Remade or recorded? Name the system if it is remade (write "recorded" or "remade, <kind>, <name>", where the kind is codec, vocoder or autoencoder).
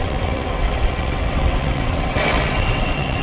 remade, vocoder, WaveNeXt